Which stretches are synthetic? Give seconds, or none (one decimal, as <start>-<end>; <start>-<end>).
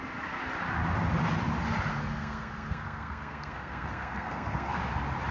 1.9-4.8